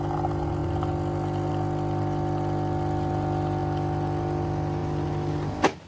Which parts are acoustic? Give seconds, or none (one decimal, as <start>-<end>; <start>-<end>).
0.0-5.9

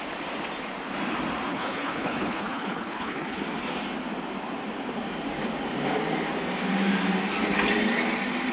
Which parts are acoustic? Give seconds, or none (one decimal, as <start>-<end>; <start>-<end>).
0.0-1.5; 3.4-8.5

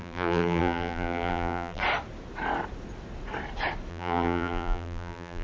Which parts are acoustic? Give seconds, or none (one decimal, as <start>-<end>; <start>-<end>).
1.8-3.9

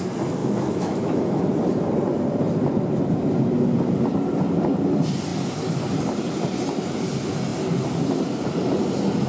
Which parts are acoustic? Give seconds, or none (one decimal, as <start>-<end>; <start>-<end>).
0.0-0.4; 1.4-9.3

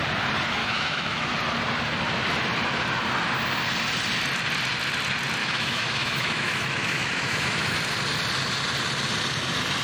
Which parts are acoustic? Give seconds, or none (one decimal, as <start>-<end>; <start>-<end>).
0.0-0.6; 1.3-5.4; 7.8-9.8

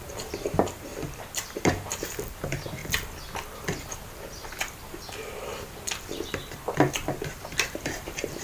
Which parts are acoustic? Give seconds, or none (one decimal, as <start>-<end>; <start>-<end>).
0.9-1.6; 2.8-7.3

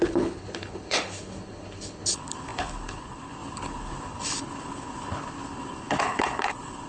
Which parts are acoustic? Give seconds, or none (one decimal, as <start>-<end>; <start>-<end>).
none

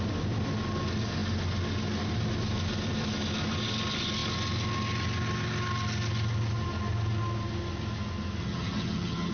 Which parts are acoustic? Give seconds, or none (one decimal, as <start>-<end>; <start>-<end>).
0.0-8.4